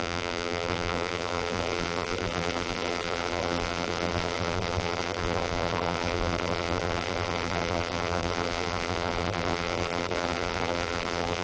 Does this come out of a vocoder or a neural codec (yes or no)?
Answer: yes